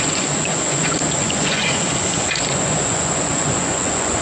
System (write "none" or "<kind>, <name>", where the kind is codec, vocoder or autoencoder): vocoder, Vocos